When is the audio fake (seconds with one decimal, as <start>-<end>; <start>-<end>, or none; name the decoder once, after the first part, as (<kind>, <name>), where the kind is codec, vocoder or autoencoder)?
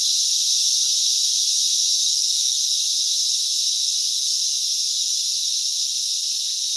2.1-2.7 (codec, SNAC)